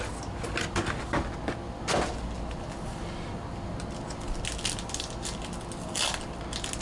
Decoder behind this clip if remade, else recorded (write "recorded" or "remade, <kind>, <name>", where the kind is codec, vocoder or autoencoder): recorded